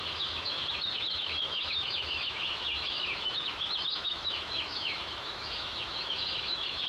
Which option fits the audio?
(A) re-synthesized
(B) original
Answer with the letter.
A